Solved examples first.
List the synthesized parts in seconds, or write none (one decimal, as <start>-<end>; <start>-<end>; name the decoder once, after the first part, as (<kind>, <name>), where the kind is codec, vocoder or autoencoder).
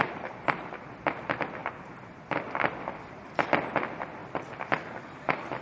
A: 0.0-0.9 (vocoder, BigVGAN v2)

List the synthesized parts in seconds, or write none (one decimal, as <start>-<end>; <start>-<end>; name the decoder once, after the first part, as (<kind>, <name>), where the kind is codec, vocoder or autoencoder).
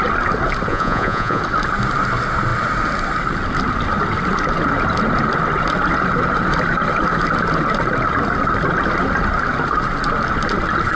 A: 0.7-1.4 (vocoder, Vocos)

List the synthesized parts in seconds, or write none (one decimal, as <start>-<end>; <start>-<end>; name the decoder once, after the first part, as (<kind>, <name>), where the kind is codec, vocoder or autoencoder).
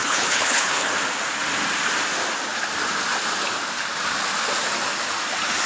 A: 0.0-0.9 (codec, HILCodec)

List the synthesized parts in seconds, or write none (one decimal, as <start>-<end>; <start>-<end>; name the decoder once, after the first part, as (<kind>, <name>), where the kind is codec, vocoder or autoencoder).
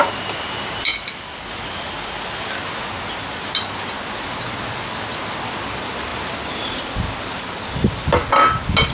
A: none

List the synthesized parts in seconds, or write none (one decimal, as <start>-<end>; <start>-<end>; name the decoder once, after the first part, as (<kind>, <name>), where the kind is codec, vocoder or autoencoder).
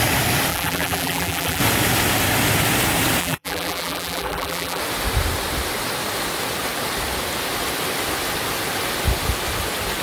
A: 0.5-1.6 (vocoder, BigVGAN v2); 3.2-4.8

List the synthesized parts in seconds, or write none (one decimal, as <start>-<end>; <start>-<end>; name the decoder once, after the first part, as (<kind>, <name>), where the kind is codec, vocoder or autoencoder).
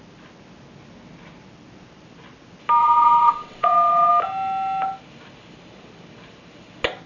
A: 2.8-4.1 (vocoder, WaveNeXt)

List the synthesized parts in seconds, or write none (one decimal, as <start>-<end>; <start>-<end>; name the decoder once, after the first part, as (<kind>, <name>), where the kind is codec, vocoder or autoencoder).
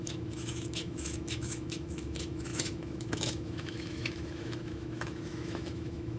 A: 0.0-6.2 (autoencoder, DAC-VAE)